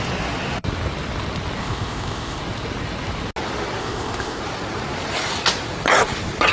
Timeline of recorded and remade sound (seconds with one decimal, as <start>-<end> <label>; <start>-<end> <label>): 0.0-1.6 recorded; 1.6-2.4 remade; 2.4-3.8 recorded; 3.8-4.4 remade; 4.4-6.5 recorded